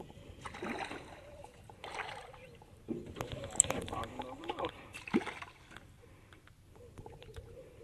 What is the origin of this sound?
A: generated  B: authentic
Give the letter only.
B